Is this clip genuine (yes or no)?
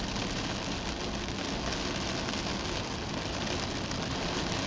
yes